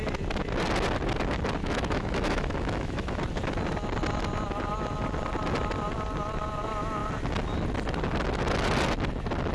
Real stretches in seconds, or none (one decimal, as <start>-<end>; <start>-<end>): 0.0-1.6; 3.2-9.5